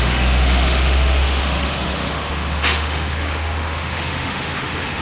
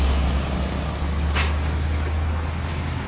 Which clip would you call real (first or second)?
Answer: second